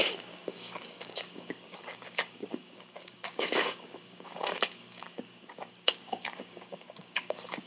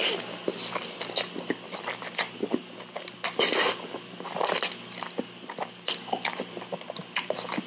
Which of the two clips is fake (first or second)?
first